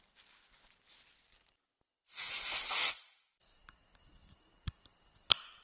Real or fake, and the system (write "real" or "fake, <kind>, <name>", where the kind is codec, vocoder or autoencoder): real